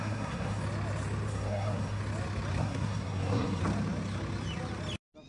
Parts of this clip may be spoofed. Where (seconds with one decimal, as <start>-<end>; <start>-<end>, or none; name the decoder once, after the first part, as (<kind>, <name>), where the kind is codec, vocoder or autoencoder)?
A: 0.0-0.6 (codec, SNAC); 1.3-2.0; 2.6-3.6